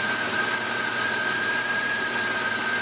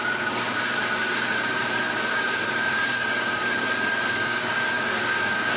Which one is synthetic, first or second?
second